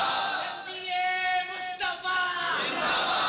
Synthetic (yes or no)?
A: no